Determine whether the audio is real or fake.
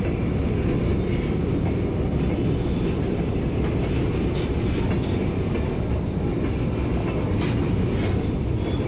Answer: real